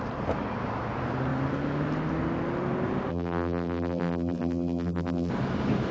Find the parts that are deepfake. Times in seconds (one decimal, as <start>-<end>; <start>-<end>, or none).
3.1-5.3